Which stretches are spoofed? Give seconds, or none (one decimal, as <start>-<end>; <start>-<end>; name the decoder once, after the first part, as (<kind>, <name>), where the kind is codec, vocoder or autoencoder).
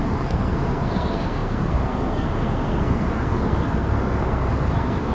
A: 0.0-5.1 (codec, SNAC)